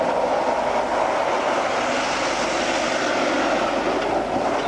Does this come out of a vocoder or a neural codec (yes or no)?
no